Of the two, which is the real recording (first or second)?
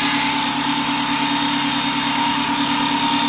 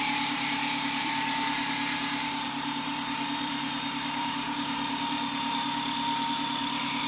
first